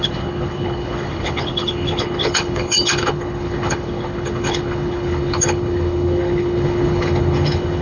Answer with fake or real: fake